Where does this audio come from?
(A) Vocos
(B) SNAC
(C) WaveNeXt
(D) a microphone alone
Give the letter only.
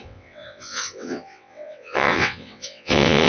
C